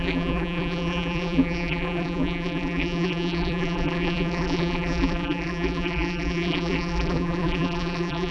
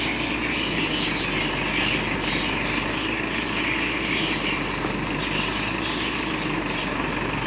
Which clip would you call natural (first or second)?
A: second